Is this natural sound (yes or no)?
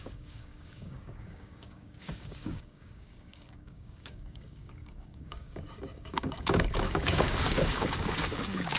no